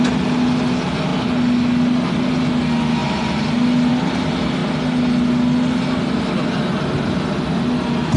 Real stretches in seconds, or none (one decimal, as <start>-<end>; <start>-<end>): 0.0-8.2

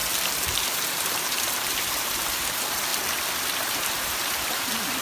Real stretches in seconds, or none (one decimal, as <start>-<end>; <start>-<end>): 2.9-3.6

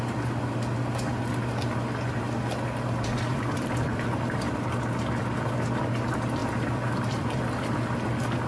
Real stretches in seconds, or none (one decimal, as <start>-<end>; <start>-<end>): 0.0-3.3; 4.1-6.4; 7.4-8.5

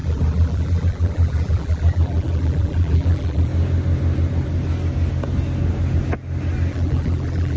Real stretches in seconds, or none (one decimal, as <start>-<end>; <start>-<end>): 3.5-6.7